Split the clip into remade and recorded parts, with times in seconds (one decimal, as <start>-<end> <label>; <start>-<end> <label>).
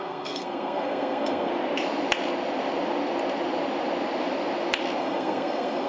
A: 0.0-1.5 remade; 1.5-5.0 recorded; 5.0-5.9 remade